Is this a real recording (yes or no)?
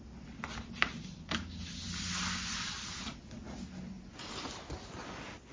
yes